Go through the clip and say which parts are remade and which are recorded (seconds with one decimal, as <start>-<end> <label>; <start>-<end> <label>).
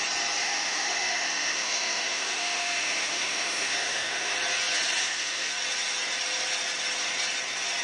0.0-0.4 recorded; 0.4-4.3 remade; 4.3-5.0 recorded; 5.0-5.5 remade; 5.5-7.8 recorded